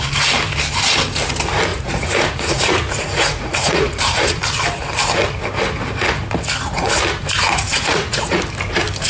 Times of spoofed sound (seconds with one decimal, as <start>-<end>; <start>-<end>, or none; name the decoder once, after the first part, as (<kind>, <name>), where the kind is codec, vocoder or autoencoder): 1.7-4.4 (vocoder, Vocos); 7.7-8.4